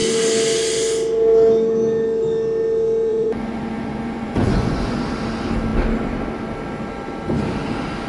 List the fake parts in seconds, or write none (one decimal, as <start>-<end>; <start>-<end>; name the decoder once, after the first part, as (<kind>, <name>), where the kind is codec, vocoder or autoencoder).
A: 3.1-5.0 (vocoder, Vocos)